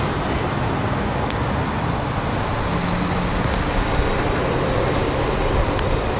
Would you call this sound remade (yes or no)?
no